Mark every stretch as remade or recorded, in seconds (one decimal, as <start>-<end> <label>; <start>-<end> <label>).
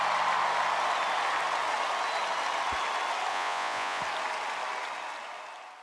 0.0-3.3 recorded; 3.3-4.0 remade; 4.0-5.8 recorded